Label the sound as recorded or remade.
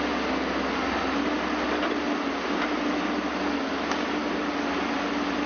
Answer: recorded